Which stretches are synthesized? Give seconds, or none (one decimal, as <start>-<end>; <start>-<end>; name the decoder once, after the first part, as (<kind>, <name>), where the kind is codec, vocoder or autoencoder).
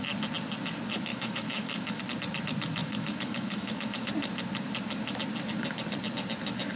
1.1-2.0 (autoencoder, DAC-VAE); 2.8-4.1